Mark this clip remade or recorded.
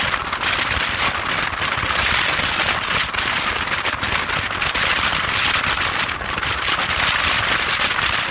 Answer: recorded